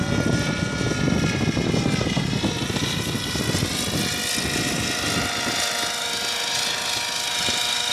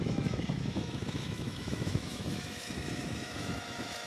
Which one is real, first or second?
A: first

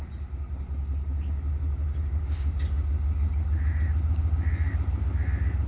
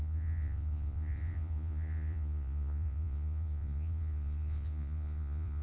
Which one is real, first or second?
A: first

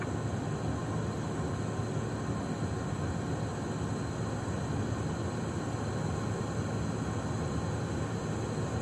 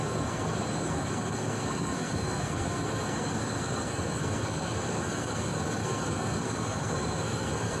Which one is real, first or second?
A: first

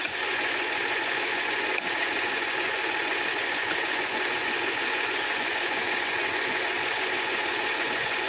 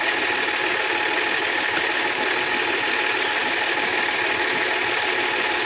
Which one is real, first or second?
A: second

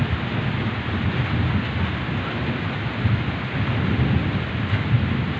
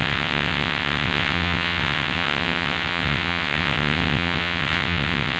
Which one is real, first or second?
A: first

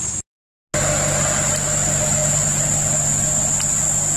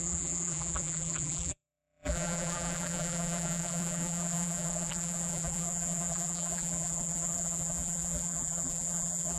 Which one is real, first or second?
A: first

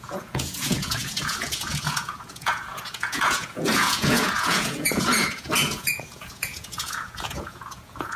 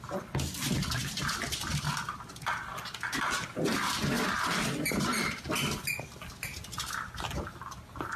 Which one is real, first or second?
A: second